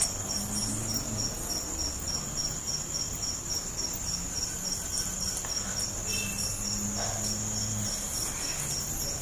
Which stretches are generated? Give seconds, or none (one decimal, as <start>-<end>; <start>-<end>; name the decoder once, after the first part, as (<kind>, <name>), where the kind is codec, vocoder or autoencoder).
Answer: none